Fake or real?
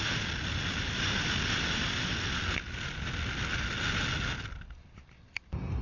real